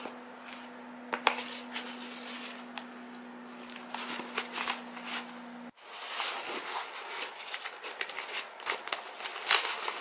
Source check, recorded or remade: recorded